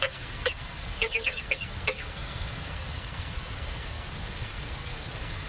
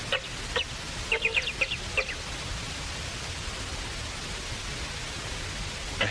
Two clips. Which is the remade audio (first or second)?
first